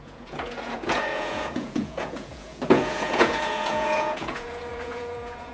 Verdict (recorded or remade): remade